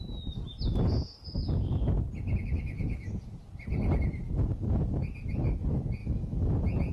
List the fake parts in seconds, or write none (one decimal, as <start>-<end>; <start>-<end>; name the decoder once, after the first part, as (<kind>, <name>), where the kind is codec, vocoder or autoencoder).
2.4-3.1 (autoencoder, DAC-VAE); 6.0-6.5